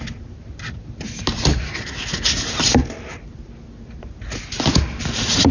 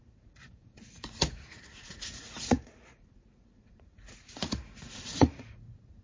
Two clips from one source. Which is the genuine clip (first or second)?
first